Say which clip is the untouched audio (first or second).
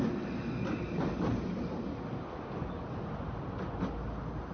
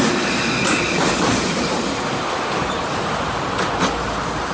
first